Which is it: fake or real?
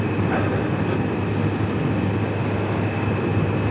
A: real